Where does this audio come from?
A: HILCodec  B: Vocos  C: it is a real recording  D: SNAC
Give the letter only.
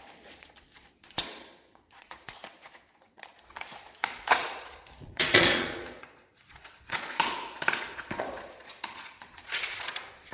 B